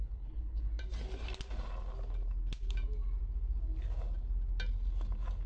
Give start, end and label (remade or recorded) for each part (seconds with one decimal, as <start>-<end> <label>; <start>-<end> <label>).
0.0-0.7 remade; 0.7-5.5 recorded